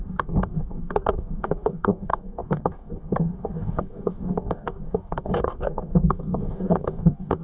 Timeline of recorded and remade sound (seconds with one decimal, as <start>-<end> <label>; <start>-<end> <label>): 0.0-7.4 remade